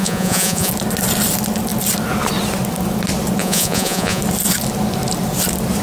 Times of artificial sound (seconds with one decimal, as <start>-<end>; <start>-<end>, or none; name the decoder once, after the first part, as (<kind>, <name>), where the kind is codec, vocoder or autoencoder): 0.0-0.7 (vocoder, Vocos); 3.4-4.2

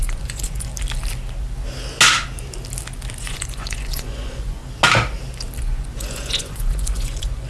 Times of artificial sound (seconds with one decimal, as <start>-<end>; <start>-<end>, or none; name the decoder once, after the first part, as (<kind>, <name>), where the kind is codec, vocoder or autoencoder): 0.0-0.7 (vocoder, Vocos); 3.2-4.6; 5.6-7.5

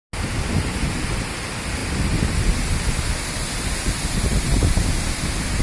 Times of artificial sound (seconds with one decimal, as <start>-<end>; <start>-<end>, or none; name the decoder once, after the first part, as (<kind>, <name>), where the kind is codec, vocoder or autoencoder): none

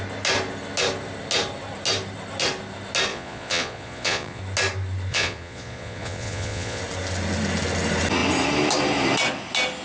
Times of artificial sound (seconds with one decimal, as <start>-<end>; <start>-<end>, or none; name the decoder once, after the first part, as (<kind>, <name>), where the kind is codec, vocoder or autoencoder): 3.1-4.4 (vocoder, Vocos); 5.1-6.8

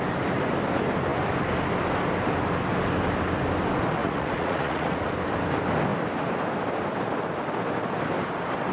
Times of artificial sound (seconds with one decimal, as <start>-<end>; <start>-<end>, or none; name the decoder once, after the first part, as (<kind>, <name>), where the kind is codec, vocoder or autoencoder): 4.0-5.1 (vocoder, Vocos)

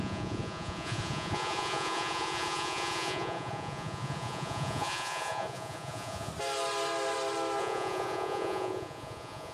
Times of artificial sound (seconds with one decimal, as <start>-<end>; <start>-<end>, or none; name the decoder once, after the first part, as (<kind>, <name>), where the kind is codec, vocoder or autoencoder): 0.0-6.3 (vocoder, Vocos); 7.6-9.5

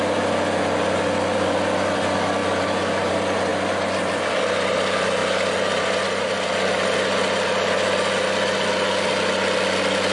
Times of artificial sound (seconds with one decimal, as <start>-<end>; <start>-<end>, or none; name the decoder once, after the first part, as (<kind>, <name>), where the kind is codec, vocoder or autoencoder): none